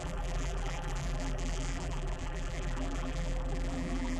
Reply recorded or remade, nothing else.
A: remade